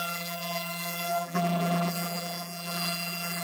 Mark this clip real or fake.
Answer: fake